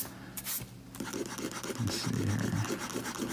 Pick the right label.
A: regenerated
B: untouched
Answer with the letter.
B